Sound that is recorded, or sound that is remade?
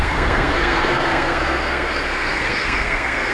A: remade